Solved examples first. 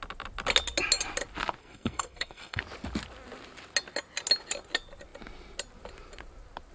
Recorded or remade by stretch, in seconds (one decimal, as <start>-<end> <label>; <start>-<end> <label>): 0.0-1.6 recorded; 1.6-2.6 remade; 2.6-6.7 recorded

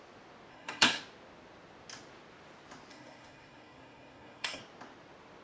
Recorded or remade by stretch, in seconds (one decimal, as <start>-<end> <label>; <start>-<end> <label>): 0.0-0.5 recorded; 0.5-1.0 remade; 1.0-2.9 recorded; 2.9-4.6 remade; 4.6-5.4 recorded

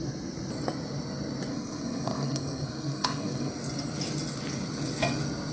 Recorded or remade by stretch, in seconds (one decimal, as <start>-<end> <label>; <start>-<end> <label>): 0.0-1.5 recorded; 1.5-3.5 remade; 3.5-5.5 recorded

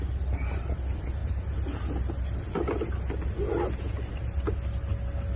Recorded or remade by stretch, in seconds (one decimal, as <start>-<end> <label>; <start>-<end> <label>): 0.0-5.4 recorded

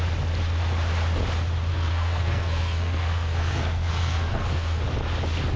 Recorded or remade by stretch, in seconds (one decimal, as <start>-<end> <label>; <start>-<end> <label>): 0.0-1.7 recorded; 1.7-4.8 remade; 4.8-5.6 recorded